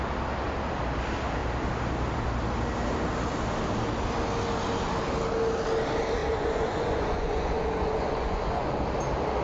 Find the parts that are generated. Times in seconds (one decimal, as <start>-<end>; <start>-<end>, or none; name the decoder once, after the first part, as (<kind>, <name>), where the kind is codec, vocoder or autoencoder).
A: 6.2-8.8 (vocoder, Vocos)